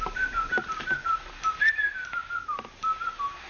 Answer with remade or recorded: recorded